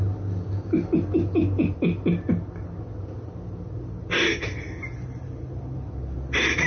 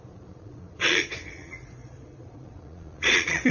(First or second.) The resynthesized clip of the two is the second